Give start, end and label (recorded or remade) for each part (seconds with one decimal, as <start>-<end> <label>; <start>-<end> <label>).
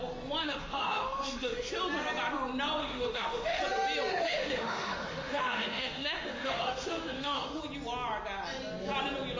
0.0-0.4 recorded; 0.4-1.7 remade; 1.7-2.8 recorded; 2.8-3.6 remade; 3.6-4.1 recorded; 4.1-7.6 remade; 7.6-9.4 recorded